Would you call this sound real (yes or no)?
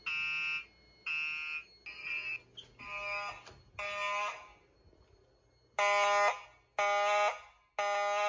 yes